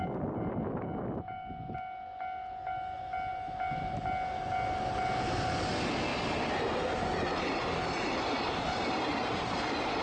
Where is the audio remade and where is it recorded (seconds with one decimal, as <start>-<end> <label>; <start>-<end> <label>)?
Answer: 0.0-3.3 recorded; 3.3-4.0 remade; 4.0-10.0 recorded